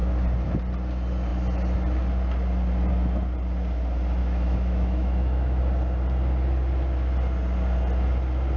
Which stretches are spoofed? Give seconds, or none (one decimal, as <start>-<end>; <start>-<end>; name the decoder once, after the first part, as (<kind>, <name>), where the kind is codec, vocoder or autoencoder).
4.2-5.6 (autoencoder, DAC-VAE)